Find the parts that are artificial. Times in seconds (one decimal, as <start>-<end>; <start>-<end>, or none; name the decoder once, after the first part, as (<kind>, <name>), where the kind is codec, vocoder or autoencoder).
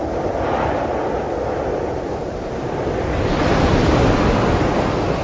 none